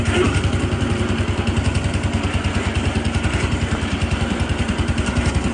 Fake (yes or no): no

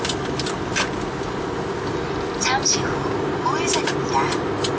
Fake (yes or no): no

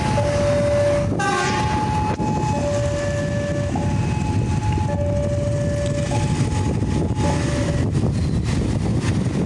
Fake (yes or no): no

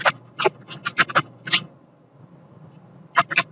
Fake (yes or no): no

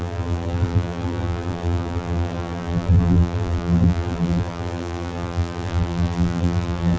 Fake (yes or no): yes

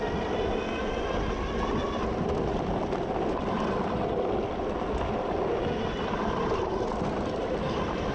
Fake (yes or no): no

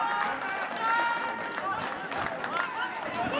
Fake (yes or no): no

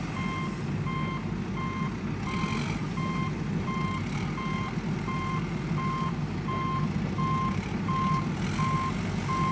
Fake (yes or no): no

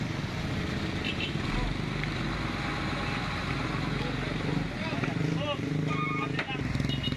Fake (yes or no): no